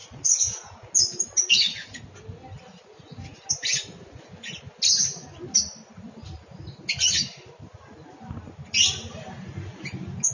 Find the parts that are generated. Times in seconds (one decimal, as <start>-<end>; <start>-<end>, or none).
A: 0.0-0.9